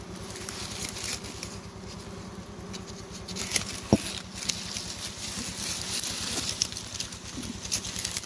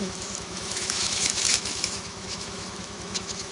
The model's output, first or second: second